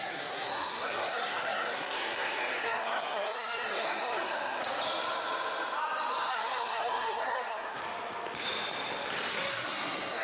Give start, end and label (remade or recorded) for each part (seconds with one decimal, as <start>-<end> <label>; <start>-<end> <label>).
0.0-4.6 remade; 4.6-6.3 recorded; 6.3-7.8 remade; 7.8-9.3 recorded; 9.3-10.2 remade